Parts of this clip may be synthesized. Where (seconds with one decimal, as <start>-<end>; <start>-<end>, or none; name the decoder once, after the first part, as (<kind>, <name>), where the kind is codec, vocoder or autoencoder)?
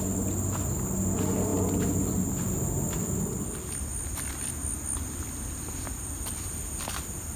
none